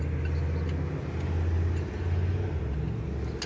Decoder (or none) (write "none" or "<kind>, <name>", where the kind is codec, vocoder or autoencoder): none